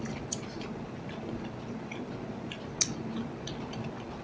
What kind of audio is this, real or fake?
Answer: real